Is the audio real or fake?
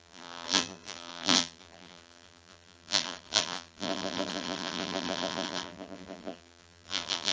fake